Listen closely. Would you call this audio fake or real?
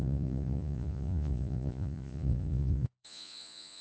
fake